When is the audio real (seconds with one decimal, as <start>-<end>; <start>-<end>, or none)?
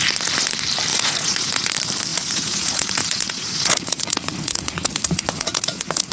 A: 0.0-0.9; 1.7-2.1